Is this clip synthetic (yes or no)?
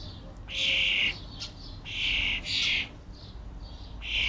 no